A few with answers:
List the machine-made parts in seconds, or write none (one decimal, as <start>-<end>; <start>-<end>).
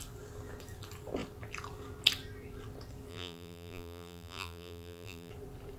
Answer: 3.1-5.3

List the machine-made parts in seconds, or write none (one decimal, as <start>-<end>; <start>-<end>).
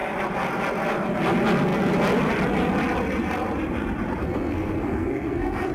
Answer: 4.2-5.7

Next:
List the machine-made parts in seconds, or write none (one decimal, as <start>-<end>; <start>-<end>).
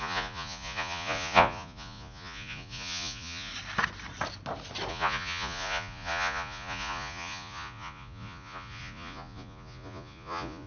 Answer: 0.0-3.5; 4.9-10.7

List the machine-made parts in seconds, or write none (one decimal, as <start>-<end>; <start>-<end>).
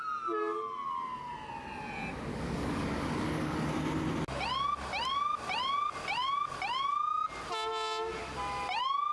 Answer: 2.3-3.7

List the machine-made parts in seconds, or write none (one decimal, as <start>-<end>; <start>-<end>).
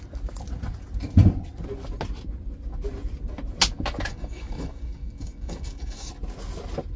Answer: 4.1-6.1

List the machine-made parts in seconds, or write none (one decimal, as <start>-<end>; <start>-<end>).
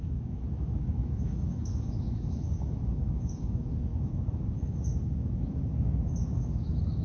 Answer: 0.0-7.0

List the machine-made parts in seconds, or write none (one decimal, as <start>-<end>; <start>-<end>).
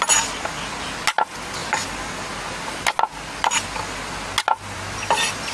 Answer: none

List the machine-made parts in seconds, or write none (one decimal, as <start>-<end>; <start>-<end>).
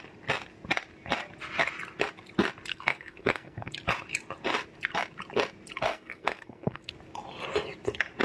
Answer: 2.7-3.7; 5.9-6.9